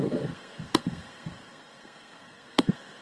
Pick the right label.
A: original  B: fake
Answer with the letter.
B